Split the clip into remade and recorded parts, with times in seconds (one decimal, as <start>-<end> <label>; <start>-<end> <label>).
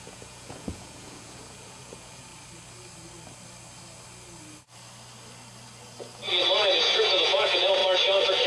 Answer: 0.0-2.3 remade; 2.3-6.8 recorded; 6.8-7.8 remade; 7.8-8.5 recorded